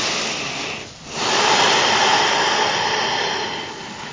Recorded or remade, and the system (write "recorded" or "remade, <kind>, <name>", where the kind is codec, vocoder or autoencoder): recorded